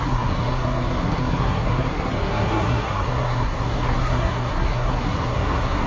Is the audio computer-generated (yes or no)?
yes